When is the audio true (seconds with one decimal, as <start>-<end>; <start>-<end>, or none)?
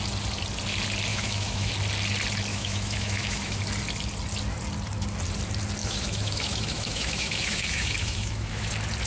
0.0-1.1; 1.7-2.5; 3.6-5.8; 8.7-9.1